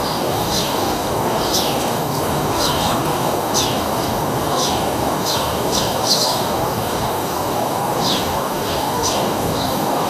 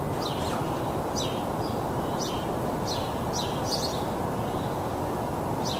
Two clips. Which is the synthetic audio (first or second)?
first